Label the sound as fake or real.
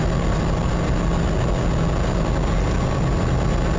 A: real